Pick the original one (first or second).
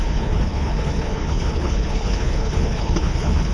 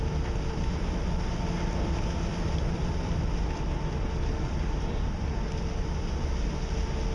second